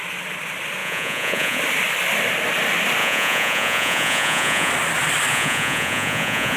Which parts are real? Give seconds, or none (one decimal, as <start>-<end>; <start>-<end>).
0.0-0.8; 1.6-3.0; 4.7-5.3